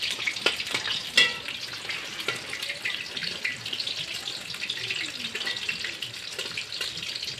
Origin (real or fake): real